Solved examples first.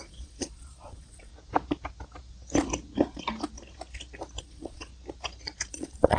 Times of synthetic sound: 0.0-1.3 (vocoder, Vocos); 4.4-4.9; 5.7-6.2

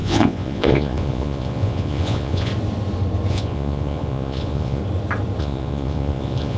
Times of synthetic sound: 0.0-2.5 (vocoder, Vocos); 3.3-4.8; 5.4-6.6

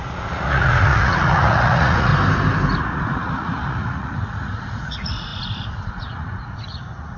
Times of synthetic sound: 0.0-2.1 (vocoder, Vocos); 2.8-7.2

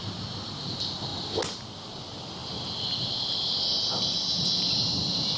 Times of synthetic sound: none